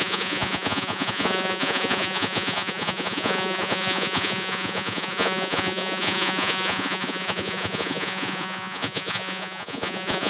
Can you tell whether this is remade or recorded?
remade